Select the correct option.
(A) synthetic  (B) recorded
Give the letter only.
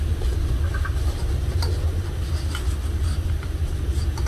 B